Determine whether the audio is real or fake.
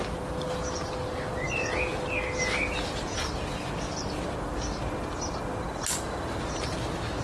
real